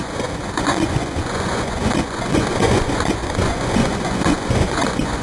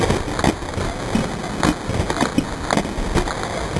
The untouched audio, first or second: second